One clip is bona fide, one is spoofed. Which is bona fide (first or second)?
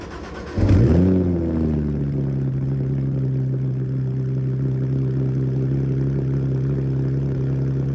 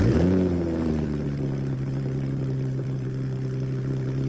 first